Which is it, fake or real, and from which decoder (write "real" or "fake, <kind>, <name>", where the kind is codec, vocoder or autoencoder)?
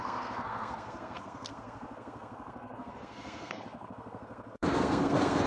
fake, codec, SNAC